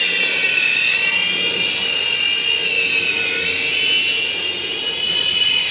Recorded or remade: recorded